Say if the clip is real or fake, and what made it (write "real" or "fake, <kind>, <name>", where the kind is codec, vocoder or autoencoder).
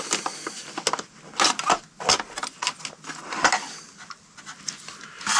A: real